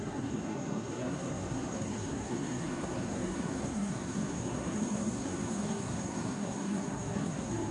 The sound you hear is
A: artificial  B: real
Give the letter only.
A